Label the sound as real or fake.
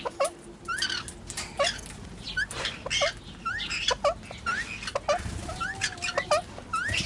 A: real